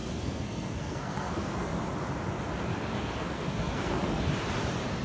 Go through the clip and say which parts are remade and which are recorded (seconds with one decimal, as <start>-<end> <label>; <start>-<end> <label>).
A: 0.0-1.7 remade; 1.7-2.9 recorded; 2.9-4.2 remade; 4.2-5.0 recorded